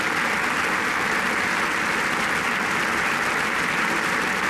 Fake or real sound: real